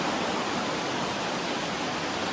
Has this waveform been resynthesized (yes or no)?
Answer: no